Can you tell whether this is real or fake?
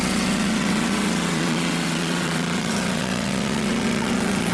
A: fake